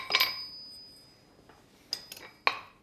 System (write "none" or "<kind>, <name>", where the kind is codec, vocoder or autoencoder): none